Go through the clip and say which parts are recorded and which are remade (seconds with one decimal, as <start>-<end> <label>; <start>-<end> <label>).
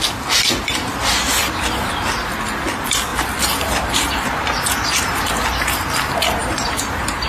0.0-3.1 recorded; 3.1-5.4 remade; 5.4-6.4 recorded; 6.4-7.3 remade